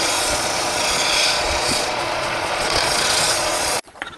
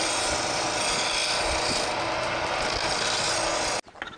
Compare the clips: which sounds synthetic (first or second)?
first